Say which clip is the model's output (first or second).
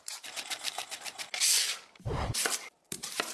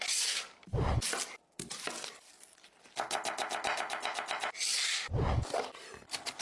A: first